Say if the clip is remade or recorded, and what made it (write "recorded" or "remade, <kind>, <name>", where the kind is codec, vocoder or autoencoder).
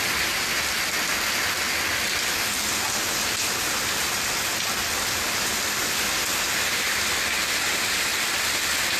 recorded